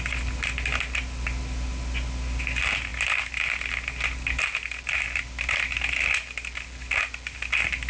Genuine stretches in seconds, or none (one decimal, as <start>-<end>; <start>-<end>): 0.0-7.9